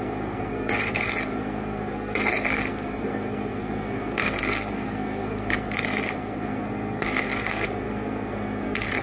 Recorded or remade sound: remade